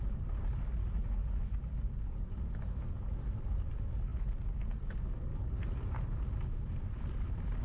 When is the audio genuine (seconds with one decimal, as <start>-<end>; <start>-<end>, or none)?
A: 0.0-7.6